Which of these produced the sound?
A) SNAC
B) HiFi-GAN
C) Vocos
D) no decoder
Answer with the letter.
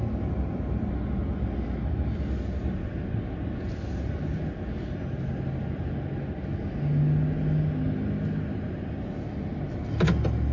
D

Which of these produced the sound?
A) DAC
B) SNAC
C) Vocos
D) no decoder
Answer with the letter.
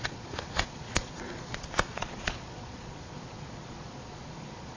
C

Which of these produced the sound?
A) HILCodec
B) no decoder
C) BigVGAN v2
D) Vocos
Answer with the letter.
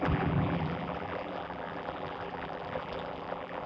C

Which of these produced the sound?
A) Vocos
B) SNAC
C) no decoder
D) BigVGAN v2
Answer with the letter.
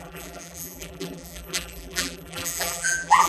D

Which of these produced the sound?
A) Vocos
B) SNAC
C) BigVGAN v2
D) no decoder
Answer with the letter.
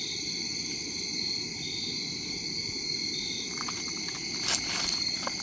D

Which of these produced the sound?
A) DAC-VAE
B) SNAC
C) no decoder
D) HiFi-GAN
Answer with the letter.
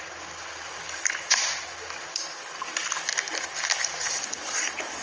C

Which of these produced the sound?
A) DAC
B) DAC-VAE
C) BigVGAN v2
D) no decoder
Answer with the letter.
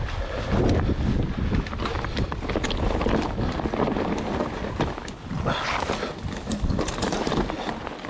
D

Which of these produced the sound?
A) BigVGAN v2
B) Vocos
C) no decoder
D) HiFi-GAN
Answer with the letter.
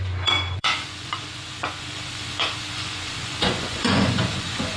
B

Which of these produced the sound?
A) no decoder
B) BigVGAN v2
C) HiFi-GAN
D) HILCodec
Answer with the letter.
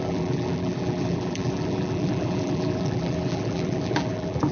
B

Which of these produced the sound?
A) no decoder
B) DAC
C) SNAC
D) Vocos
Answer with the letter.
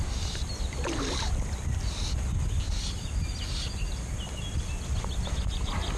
A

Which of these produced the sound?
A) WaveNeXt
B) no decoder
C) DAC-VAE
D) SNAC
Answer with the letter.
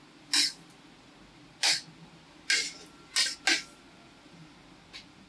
B